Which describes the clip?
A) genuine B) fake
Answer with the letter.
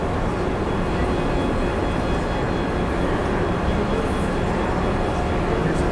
A